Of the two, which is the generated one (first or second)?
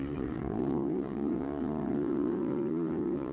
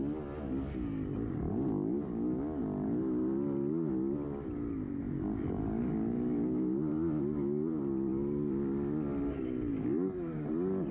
first